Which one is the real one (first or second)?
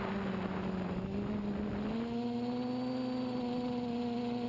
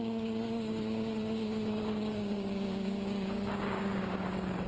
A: first